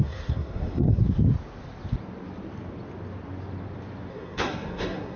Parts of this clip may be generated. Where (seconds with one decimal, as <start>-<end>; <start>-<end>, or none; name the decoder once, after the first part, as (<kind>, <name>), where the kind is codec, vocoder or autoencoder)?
0.0-1.0 (codec, SNAC); 4.1-5.2